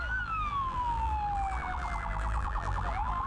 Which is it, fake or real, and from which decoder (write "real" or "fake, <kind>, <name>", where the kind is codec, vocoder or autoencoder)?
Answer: fake, vocoder, BigVGAN v2